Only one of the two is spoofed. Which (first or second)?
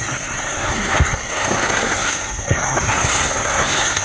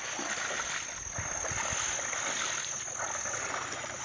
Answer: first